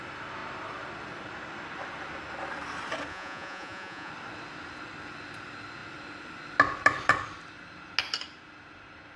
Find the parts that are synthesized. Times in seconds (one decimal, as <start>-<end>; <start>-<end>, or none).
3.1-4.1